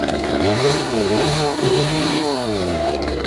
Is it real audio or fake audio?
fake